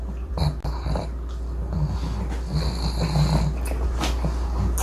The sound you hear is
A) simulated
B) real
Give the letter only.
B